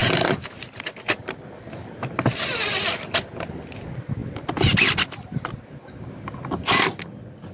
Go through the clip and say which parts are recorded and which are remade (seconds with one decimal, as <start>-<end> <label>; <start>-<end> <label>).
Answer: 0.0-7.5 recorded